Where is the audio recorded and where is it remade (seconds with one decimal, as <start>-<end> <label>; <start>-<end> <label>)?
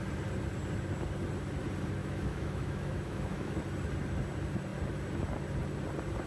0.0-2.0 recorded; 2.0-3.6 remade; 3.6-6.3 recorded